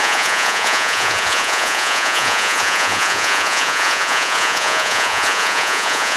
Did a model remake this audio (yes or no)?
yes